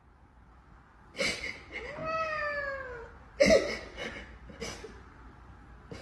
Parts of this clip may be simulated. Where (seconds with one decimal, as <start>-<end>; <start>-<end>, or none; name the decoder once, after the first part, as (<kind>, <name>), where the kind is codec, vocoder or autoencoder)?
none